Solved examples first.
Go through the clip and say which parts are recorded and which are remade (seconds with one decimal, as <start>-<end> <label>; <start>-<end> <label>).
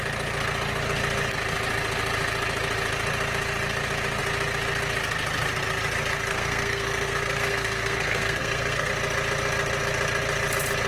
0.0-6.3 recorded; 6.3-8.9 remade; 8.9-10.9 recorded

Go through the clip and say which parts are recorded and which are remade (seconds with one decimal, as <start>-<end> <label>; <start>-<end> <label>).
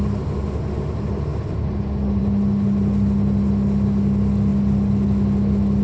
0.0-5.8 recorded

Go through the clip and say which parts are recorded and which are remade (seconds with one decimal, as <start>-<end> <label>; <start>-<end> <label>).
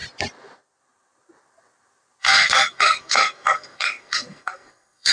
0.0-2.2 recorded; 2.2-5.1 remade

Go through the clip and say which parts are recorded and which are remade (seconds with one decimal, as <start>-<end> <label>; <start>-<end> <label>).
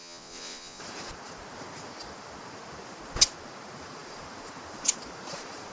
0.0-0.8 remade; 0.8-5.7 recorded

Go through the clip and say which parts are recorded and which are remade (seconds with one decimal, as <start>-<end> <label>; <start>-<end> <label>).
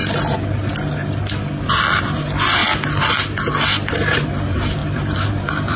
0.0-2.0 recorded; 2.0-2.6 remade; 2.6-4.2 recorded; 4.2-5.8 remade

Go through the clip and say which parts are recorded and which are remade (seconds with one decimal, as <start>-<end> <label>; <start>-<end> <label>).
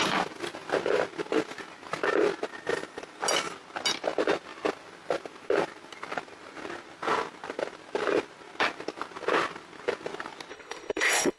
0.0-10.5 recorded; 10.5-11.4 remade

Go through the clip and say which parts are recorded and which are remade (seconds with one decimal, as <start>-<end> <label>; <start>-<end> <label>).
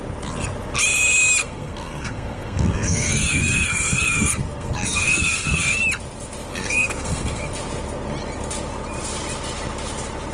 0.0-1.4 recorded; 1.4-5.8 remade; 5.8-6.5 recorded; 6.5-7.5 remade; 7.5-10.3 recorded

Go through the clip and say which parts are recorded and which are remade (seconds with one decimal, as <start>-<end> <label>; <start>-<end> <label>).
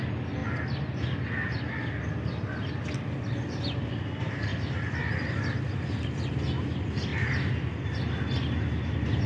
0.0-9.3 recorded